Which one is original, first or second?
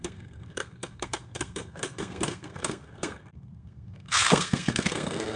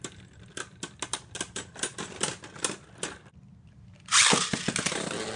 second